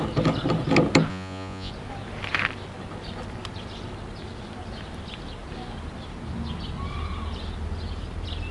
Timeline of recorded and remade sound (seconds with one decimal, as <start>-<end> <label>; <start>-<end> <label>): 0.0-1.1 recorded; 1.1-1.7 remade; 1.7-8.5 recorded